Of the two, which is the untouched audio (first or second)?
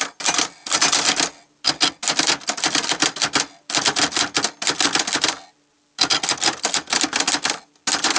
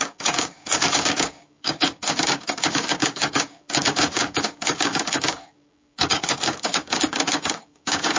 first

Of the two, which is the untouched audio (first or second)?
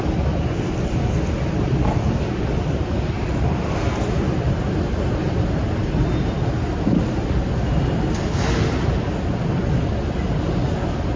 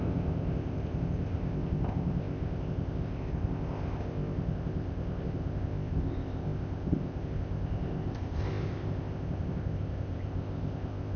first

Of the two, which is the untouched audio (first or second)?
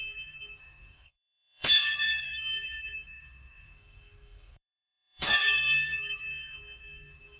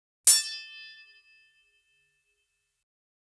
second